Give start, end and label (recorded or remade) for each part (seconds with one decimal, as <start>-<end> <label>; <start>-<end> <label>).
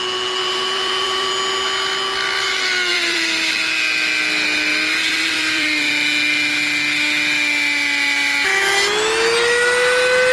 0.0-0.4 recorded; 0.4-1.3 remade; 1.3-2.9 recorded; 2.9-3.4 remade; 3.4-4.7 recorded; 4.7-5.9 remade; 5.9-10.3 recorded